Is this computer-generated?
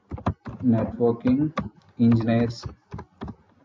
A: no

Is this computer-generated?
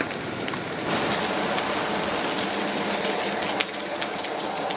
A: no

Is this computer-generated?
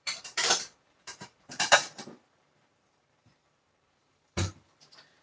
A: yes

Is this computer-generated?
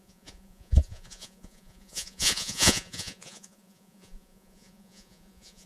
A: yes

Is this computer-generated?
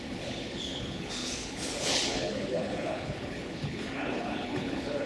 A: yes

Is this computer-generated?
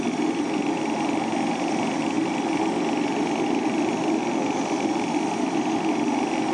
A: no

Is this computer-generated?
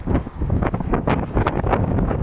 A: yes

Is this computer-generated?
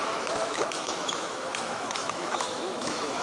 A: yes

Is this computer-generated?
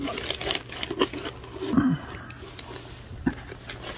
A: no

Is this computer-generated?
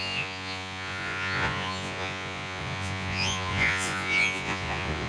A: yes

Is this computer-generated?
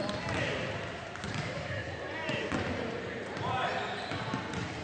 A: no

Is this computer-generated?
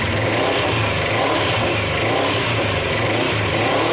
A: no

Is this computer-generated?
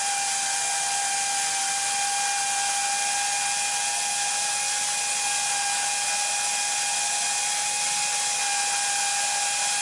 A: no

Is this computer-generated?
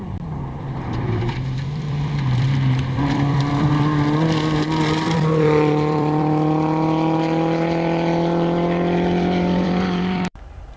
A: yes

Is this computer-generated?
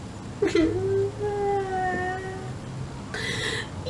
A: no